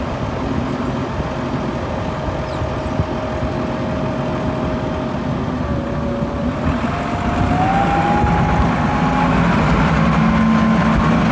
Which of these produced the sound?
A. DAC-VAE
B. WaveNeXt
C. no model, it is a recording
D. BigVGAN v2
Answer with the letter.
C